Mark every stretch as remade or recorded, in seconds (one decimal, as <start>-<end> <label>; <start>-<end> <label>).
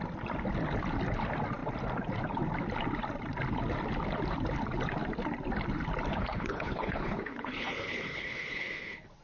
0.0-6.1 recorded; 6.1-9.2 remade